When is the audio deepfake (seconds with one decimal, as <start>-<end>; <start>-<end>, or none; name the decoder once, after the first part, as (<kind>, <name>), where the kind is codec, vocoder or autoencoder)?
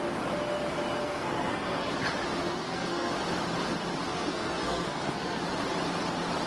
1.0-1.9 (codec, SNAC); 2.4-3.1; 4.1-5.4